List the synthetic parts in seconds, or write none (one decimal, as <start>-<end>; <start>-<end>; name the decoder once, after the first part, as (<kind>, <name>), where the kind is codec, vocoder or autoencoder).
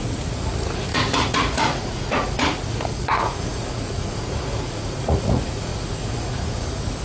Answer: 0.0-7.0 (vocoder, Vocos)